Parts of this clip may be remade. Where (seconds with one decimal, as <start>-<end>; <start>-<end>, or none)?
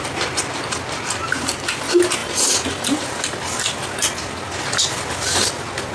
none